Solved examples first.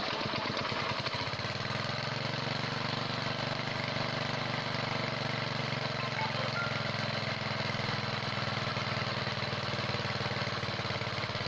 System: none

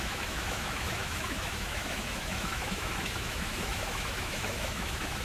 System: autoencoder, DAC-VAE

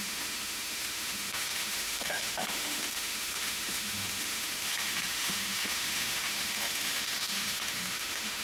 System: autoencoder, DAC-VAE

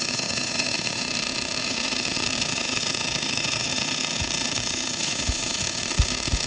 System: autoencoder, DAC-VAE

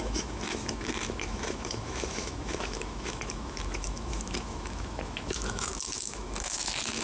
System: autoencoder, DAC-VAE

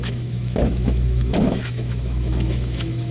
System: autoencoder, DAC-VAE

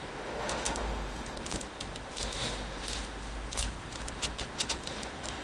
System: autoencoder, DAC-VAE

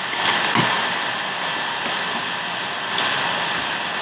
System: none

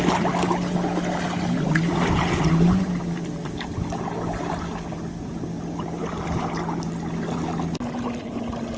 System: none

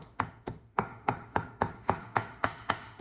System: autoencoder, DAC-VAE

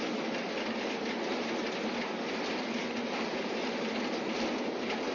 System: none